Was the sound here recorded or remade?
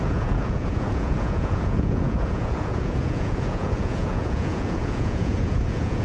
remade